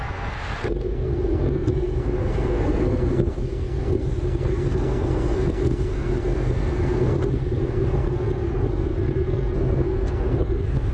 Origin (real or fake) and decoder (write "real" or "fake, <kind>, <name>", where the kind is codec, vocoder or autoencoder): fake, codec, SNAC